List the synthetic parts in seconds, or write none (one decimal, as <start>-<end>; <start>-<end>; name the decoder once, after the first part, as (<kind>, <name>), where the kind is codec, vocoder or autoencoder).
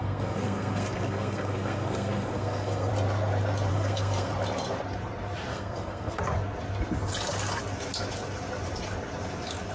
0.0-2.9 (codec, SNAC); 3.7-4.3; 5.5-6.2